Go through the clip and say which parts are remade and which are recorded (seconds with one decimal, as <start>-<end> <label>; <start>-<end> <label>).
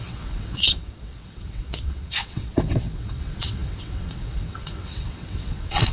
0.0-5.9 remade